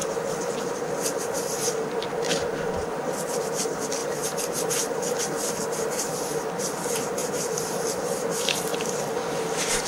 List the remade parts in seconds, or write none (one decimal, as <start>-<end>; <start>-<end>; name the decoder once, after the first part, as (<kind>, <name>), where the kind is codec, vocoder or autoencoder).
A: 0.8-9.9 (vocoder, BigVGAN v2)